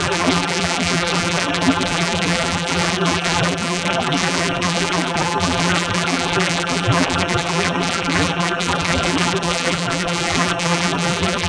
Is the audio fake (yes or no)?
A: yes